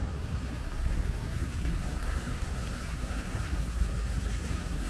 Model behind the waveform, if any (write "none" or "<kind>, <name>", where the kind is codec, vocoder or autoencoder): codec, SNAC